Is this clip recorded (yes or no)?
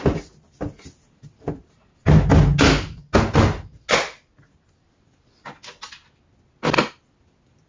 yes